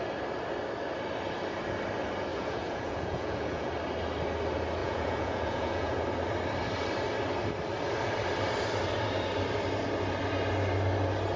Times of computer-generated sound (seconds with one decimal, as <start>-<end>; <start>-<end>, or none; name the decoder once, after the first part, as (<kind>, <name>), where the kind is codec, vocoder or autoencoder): 2.3-3.7 (vocoder, Vocos); 4.8-6.0